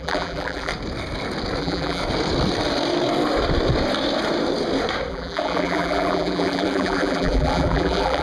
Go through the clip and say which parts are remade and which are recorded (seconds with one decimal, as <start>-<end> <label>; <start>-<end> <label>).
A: 0.0-0.7 remade; 0.7-1.6 recorded; 1.6-2.0 remade; 2.0-5.1 recorded; 5.1-8.2 remade